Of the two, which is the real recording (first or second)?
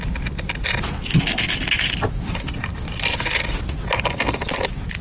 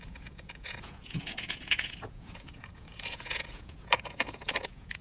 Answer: first